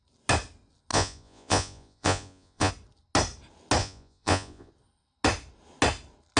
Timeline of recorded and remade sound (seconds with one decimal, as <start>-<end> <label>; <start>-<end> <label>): 0.0-0.9 recorded; 0.9-2.7 remade; 2.7-3.8 recorded; 3.8-4.7 remade; 4.7-6.4 recorded